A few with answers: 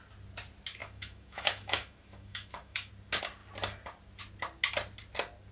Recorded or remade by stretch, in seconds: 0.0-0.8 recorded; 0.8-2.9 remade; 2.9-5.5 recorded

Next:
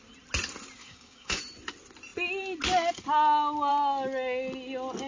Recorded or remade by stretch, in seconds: 0.0-0.8 recorded; 0.8-1.4 remade; 1.4-5.1 recorded

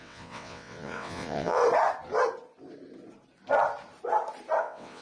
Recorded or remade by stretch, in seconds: 0.0-1.6 remade; 1.6-4.6 recorded; 4.6-5.0 remade

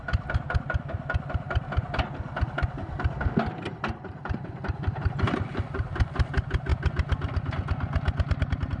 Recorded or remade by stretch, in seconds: 0.0-6.7 recorded; 6.7-7.5 remade; 7.5-8.8 recorded

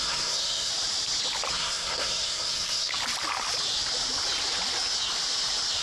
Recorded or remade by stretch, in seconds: 0.0-0.7 remade; 0.7-1.5 recorded; 1.5-2.9 remade; 2.9-5.8 recorded

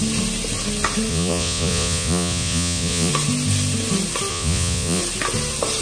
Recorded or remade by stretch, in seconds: 0.0-1.1 recorded; 1.1-3.1 remade; 3.1-4.3 recorded; 4.3-5.0 remade; 5.0-5.8 recorded

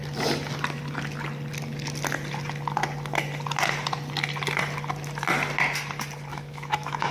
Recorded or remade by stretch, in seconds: 0.0-6.3 recorded; 6.3-7.1 remade

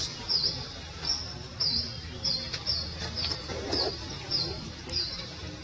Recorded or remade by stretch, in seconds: 0.0-5.6 recorded